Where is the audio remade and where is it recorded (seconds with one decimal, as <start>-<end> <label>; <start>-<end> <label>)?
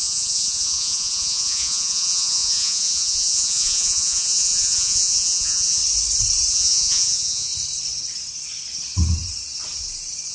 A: 0.0-5.8 remade; 5.8-6.5 recorded; 6.5-7.5 remade; 7.5-10.3 recorded